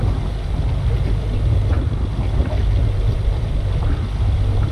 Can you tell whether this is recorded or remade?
recorded